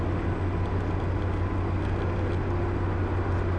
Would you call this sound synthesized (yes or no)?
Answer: no